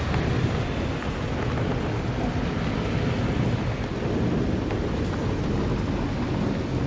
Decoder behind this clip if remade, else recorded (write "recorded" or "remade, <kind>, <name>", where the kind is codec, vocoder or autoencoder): recorded